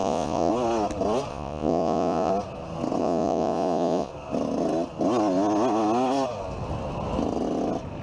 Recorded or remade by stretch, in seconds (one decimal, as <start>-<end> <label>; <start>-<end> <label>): 0.0-0.5 remade; 0.5-1.3 recorded; 1.3-2.3 remade; 2.3-3.0 recorded; 3.0-4.1 remade; 4.1-8.0 recorded